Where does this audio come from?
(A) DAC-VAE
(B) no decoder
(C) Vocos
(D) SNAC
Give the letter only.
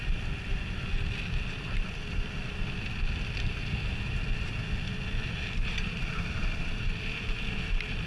B